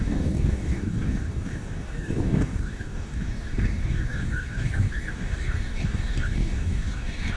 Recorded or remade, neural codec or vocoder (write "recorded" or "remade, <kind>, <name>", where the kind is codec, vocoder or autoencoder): remade, codec, DAC